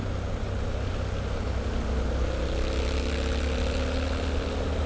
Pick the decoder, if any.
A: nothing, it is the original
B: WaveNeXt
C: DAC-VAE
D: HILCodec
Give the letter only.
A